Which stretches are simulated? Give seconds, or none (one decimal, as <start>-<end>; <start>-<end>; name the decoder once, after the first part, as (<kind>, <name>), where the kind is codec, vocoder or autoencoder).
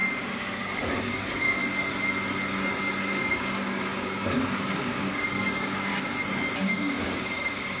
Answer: 0.0-1.6 (codec, DAC); 2.8-5.9; 6.6-7.8